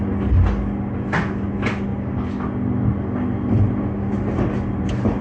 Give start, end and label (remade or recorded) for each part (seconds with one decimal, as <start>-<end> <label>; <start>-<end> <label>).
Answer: 0.0-5.2 recorded